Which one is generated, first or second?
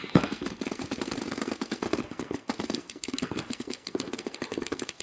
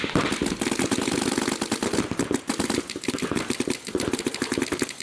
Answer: first